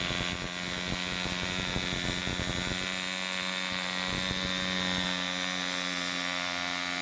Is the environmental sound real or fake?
real